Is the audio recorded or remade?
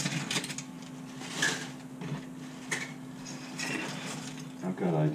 recorded